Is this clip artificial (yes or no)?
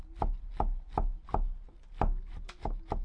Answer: no